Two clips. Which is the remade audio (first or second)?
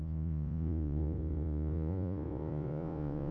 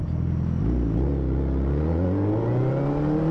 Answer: first